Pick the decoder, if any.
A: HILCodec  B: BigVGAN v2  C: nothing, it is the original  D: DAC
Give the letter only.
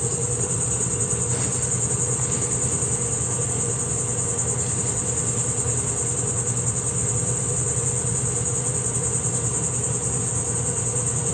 C